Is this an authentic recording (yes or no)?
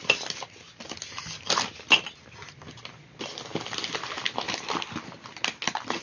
yes